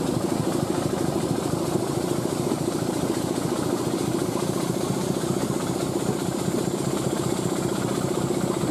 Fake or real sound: fake